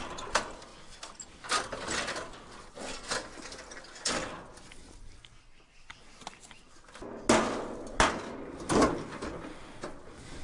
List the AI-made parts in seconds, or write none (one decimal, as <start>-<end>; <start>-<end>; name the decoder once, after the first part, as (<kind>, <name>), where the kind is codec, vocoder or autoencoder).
none